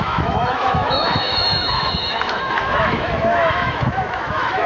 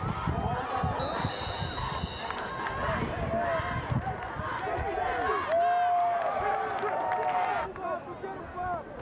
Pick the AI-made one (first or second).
first